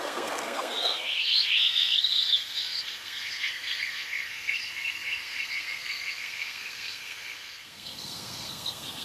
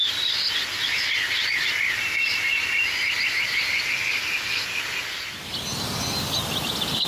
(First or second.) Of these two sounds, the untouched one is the second